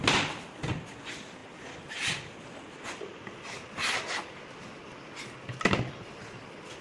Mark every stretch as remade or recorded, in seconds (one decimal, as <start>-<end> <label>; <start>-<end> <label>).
0.0-6.8 recorded